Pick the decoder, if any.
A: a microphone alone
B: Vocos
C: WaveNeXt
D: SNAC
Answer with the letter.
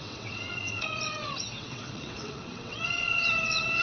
C